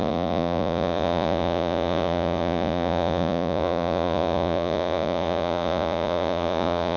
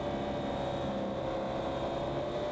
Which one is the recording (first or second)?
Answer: second